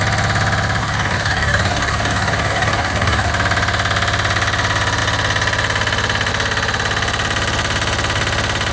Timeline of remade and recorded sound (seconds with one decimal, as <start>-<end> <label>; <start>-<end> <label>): 0.0-0.8 recorded; 0.8-3.3 remade; 3.3-8.7 recorded